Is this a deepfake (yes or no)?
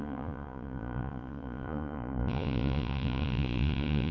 yes